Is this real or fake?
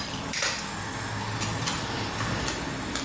real